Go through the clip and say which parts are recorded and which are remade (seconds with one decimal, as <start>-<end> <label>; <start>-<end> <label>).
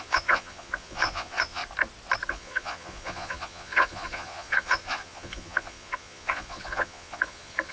0.0-1.6 remade; 1.6-2.3 recorded; 2.3-7.7 remade